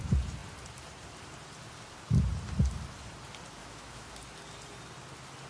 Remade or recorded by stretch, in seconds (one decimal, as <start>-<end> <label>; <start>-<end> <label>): 0.0-3.6 recorded; 3.6-4.1 remade; 4.1-5.5 recorded